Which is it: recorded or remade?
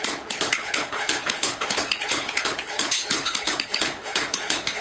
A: remade